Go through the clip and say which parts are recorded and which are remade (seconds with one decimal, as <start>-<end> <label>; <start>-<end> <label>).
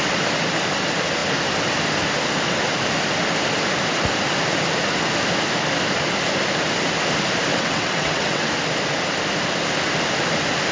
0.0-7.5 recorded; 7.5-8.5 remade; 8.5-10.7 recorded